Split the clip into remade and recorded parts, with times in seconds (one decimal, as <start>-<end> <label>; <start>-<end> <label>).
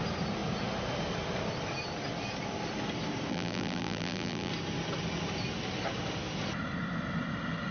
0.0-3.3 recorded; 3.3-4.5 remade; 4.5-7.7 recorded